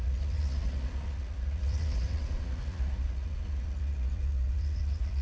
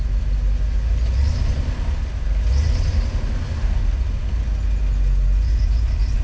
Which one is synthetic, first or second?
first